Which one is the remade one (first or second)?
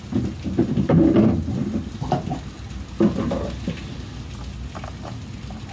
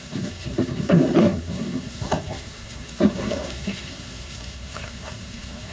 second